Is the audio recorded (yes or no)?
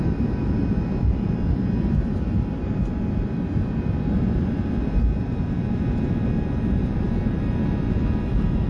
no